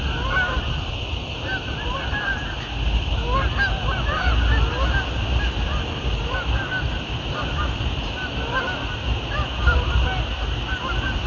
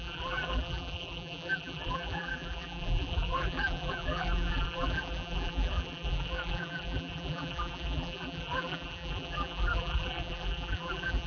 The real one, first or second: first